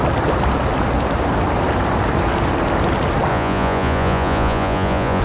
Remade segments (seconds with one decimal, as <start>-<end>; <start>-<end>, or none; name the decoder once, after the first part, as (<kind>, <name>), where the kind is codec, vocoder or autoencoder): 3.3-5.2 (vocoder, Vocos)